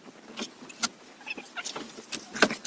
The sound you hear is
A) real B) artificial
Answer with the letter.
A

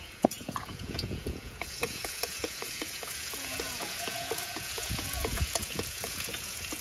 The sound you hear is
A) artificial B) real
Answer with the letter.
A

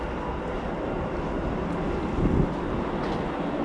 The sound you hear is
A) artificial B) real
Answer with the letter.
B